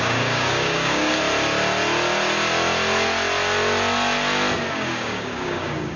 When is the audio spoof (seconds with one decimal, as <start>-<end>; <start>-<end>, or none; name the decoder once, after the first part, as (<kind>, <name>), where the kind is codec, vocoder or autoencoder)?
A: 0.0-1.2 (codec, DAC); 4.7-6.0